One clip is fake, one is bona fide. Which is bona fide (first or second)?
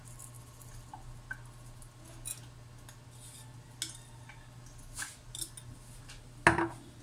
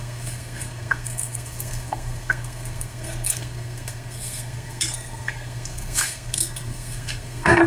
first